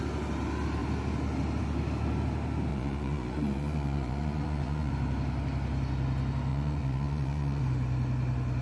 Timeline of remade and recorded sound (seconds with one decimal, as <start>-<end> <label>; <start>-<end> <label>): 0.0-2.7 recorded; 2.7-4.9 remade; 4.9-6.5 recorded; 6.5-7.6 remade; 7.6-8.6 recorded